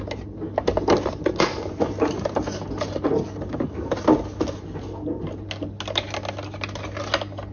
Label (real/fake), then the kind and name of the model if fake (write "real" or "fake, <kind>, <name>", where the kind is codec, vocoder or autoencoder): real